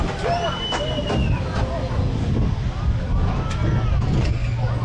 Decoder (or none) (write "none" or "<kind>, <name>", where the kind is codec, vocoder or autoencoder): none